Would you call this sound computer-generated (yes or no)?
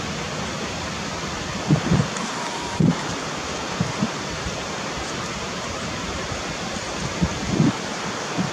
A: no